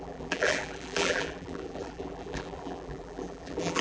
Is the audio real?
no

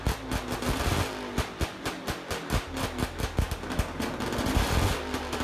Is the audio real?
yes